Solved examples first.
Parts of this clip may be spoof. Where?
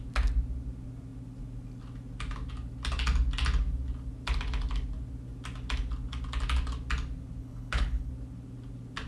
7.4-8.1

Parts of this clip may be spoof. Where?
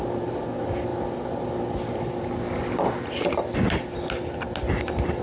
none